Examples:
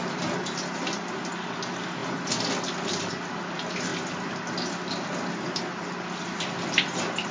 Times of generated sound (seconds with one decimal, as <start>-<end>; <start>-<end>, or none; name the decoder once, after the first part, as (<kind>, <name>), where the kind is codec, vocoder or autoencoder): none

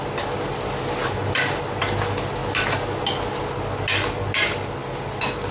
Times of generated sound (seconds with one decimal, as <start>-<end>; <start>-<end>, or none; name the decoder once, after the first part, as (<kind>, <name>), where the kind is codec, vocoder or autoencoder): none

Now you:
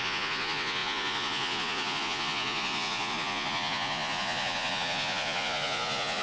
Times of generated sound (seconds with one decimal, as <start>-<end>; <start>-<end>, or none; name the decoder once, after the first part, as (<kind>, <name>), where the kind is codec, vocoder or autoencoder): 0.0-6.2 (vocoder, Vocos)

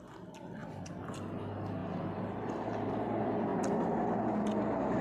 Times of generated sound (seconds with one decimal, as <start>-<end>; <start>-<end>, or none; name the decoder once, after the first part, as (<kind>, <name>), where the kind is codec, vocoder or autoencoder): 1.8-2.9 (vocoder, BigVGAN v2)

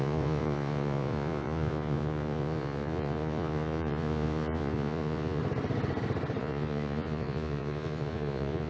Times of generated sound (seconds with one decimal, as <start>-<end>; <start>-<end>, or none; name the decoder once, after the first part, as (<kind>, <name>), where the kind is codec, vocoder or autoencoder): 0.0-5.4 (vocoder, Vocos); 6.4-8.7

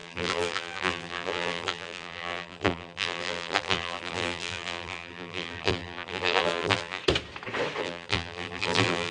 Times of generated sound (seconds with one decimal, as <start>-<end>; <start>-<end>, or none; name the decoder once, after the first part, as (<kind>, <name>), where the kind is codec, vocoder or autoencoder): 0.0-7.0 (vocoder, BigVGAN v2); 7.8-9.1